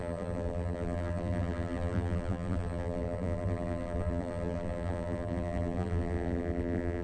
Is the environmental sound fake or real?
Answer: fake